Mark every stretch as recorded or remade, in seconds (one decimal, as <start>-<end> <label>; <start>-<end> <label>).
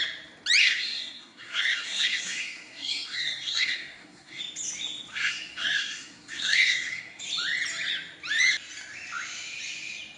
0.0-0.6 recorded; 0.6-4.4 remade; 4.4-5.1 recorded; 5.1-7.2 remade; 7.2-10.2 recorded